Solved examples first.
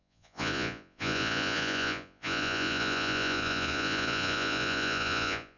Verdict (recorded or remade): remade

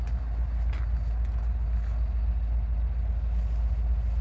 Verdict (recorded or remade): recorded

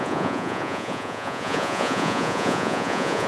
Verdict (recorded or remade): remade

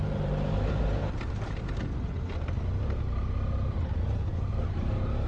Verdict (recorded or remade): recorded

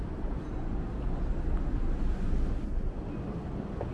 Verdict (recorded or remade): recorded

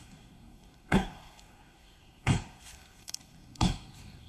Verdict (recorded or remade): remade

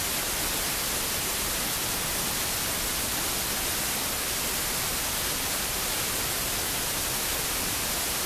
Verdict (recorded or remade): recorded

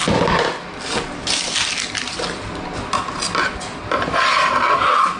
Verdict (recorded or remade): recorded